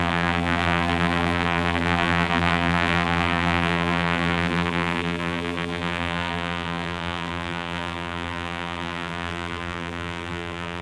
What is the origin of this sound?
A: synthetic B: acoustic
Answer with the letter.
A